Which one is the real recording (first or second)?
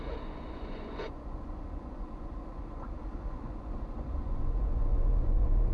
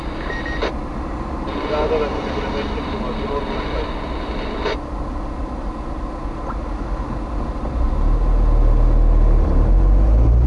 second